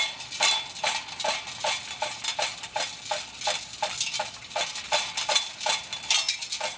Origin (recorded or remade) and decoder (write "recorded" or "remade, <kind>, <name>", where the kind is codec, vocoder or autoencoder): recorded